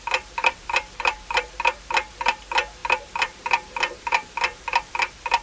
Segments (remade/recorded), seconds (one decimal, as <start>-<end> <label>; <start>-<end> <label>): 0.0-0.4 recorded; 0.4-1.4 remade; 1.4-5.4 recorded